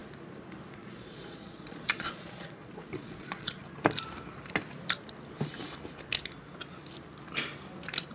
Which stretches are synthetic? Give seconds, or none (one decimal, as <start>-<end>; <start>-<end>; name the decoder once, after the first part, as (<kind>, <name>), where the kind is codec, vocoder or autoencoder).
0.7-3.6 (vocoder, Vocos)